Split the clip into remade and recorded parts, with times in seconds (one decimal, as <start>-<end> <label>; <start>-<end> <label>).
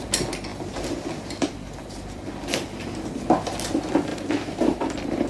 0.0-0.5 recorded; 0.5-3.1 remade; 3.1-4.1 recorded; 4.1-5.3 remade